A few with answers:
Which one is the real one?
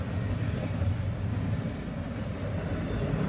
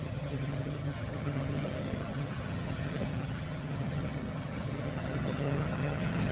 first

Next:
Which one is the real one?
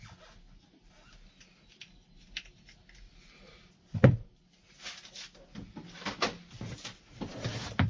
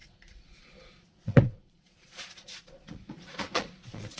first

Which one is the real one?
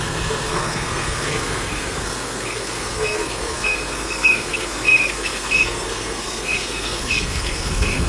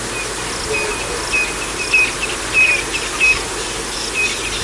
second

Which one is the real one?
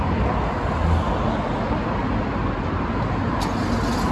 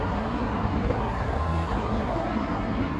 first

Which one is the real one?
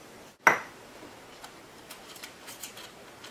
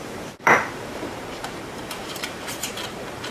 first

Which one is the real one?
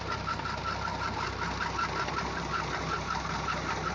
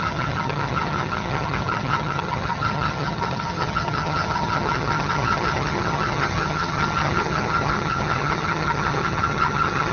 first